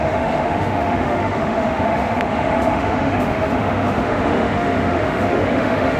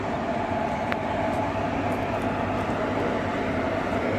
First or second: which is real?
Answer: second